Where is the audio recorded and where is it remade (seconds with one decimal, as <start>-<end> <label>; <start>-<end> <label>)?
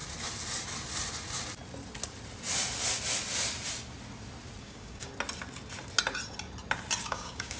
0.0-4.6 recorded; 4.6-5.1 remade; 5.1-7.0 recorded; 7.0-7.6 remade